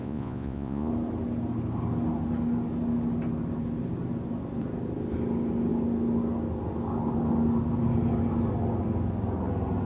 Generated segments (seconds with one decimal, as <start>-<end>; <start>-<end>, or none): 0.0-0.9